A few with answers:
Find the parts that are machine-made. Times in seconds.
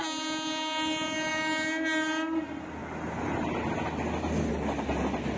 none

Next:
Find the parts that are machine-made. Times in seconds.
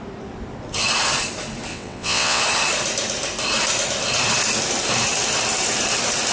1.7-2.4 (vocoder, WaveNeXt)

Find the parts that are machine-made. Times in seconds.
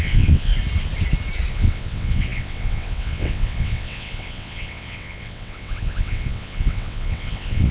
0.0-0.5 (vocoder, WaveNeXt); 1.5-7.7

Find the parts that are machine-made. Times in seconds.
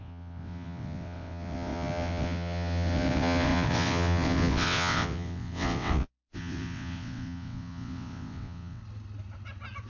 0.0-8.8 (vocoder, WaveNeXt)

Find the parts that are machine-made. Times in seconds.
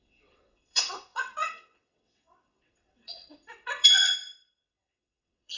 0.0-5.6 (vocoder, WaveNeXt)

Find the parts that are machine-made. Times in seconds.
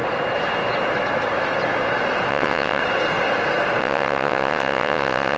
2.3-2.8 (vocoder, WaveNeXt); 3.8-5.4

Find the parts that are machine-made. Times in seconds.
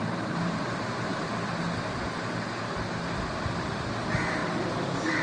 none